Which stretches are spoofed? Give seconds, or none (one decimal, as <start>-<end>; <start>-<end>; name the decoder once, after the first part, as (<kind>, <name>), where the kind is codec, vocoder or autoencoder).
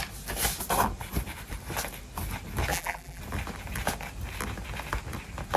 2.7-3.2 (vocoder, BigVGAN v2)